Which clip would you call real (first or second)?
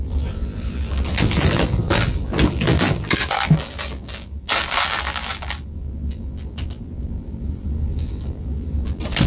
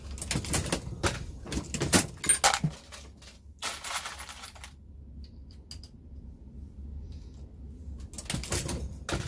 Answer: second